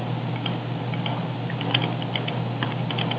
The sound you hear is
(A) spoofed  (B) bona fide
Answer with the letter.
B